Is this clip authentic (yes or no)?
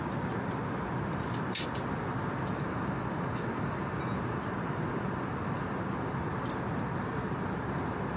yes